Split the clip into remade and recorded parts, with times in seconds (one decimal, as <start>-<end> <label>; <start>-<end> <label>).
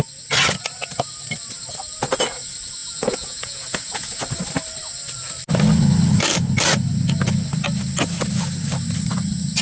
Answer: 0.0-2.8 recorded; 2.8-4.2 remade; 4.2-9.6 recorded